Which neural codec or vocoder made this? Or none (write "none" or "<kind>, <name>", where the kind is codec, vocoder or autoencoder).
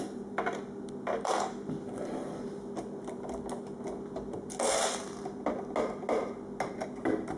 none